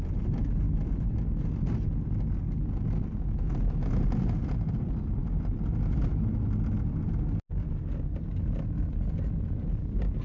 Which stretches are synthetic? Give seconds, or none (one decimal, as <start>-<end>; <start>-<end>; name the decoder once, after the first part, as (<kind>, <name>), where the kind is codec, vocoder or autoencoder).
none